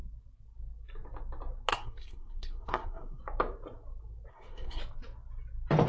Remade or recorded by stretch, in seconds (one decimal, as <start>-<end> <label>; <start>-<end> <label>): 0.0-1.7 recorded; 1.7-3.2 remade; 3.2-4.3 recorded; 4.3-4.8 remade; 4.8-5.9 recorded